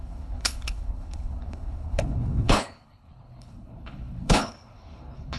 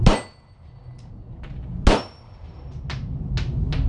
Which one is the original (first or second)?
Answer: second